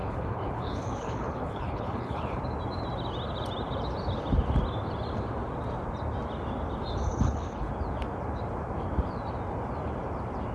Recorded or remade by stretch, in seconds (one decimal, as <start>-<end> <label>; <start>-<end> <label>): 0.0-2.4 remade; 2.4-7.1 recorded; 7.1-7.7 remade; 7.7-10.5 recorded